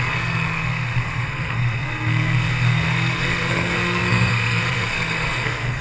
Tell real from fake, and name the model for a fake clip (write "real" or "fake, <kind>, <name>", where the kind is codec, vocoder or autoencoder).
fake, codec, SNAC